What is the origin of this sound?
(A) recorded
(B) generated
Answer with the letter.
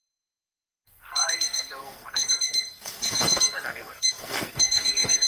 B